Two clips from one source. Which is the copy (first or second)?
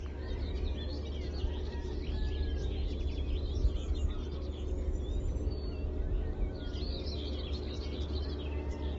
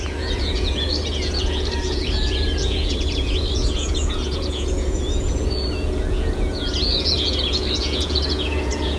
second